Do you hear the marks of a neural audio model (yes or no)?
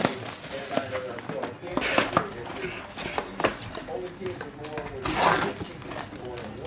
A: no